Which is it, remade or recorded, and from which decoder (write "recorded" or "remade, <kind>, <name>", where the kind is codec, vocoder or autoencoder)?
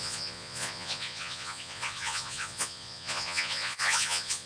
remade, vocoder, Vocos